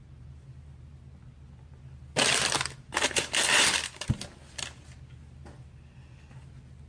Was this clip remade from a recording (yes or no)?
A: no